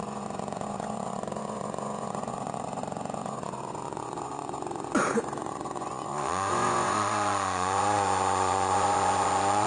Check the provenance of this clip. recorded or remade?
remade